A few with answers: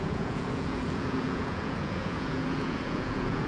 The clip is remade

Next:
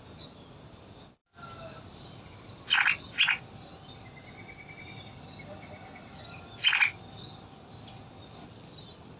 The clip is recorded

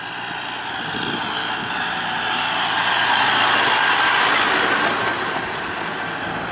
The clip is recorded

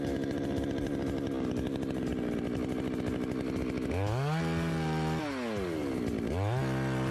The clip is recorded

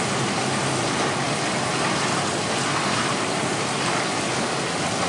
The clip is recorded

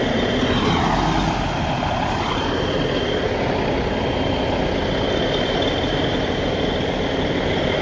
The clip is recorded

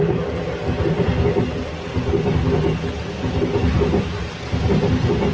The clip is recorded